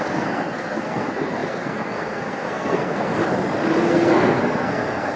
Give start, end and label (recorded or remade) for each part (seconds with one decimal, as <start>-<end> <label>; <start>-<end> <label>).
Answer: 0.0-3.2 remade; 3.2-3.8 recorded; 3.8-5.2 remade